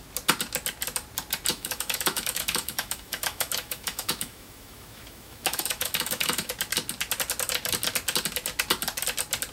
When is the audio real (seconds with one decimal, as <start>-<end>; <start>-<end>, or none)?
0.0-1.5; 6.5-9.5